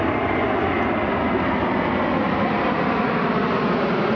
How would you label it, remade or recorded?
recorded